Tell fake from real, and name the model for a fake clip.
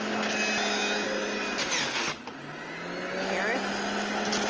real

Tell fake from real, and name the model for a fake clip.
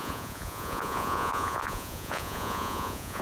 fake, vocoder, Vocos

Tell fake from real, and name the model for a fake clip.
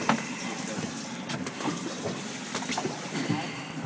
real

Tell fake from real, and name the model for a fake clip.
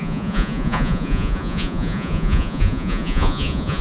fake, vocoder, Vocos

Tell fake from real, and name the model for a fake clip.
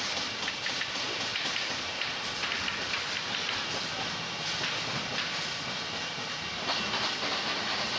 real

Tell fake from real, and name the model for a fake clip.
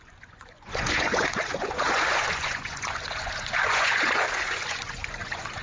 fake, vocoder, Vocos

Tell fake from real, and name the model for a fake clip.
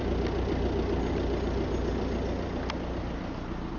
real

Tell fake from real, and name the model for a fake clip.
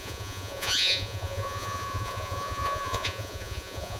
fake, vocoder, Vocos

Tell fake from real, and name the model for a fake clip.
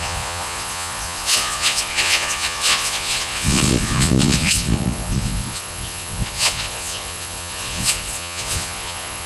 fake, vocoder, Vocos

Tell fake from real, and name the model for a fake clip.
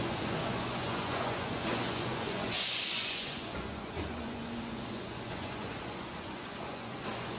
fake, vocoder, Vocos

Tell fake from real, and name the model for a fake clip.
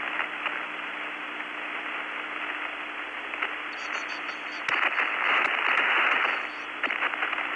real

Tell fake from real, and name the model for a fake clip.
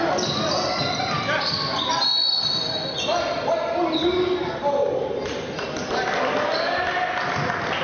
real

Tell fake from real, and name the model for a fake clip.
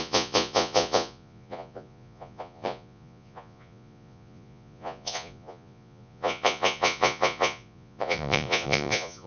fake, vocoder, Vocos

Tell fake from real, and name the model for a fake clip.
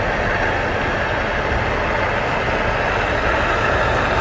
real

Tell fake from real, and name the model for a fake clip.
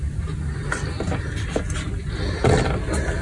real